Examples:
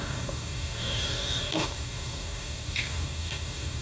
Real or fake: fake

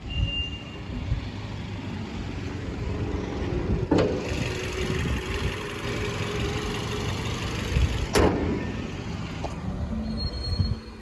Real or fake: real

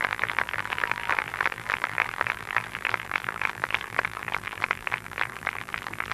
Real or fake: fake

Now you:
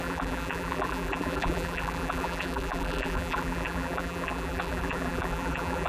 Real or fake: fake